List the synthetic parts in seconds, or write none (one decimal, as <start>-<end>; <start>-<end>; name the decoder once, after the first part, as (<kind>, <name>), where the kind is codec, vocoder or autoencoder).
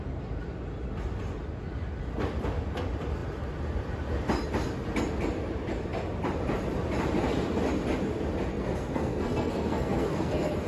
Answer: 8.5-10.7 (codec, SNAC)